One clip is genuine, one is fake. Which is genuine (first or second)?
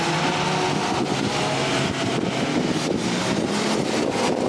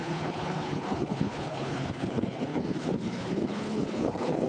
first